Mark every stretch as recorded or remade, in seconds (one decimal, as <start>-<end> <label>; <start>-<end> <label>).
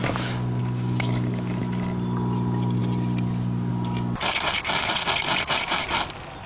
0.0-0.6 recorded; 0.6-1.6 remade; 1.6-6.5 recorded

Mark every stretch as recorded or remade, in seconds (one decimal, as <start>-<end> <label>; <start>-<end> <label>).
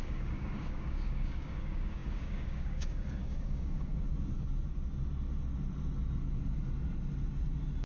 0.0-3.9 remade; 3.9-7.9 recorded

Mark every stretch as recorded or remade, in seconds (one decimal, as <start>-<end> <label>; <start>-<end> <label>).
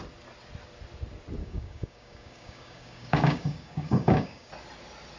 0.0-1.4 recorded; 1.4-4.5 remade; 4.5-5.2 recorded